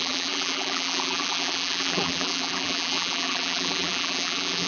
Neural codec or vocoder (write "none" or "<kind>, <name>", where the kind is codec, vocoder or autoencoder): vocoder, BigVGAN v2